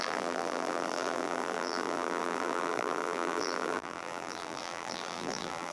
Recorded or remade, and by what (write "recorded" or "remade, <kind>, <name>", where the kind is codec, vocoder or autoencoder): remade, vocoder, BigVGAN v2